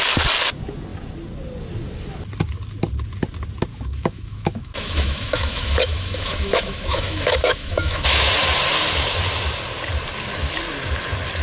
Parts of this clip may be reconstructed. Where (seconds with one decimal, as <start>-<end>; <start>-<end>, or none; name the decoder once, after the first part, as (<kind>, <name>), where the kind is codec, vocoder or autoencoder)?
3.7-8.3 (autoencoder, DAC-VAE)